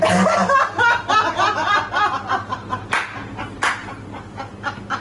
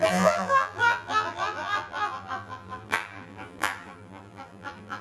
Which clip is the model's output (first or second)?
second